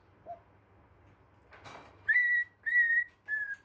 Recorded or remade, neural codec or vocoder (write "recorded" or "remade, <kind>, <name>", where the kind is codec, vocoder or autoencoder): recorded